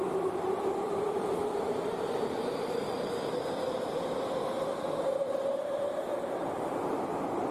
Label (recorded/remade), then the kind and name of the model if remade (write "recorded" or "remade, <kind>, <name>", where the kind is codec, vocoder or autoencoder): remade, vocoder, BigVGAN v2